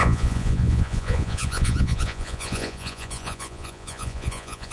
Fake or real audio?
fake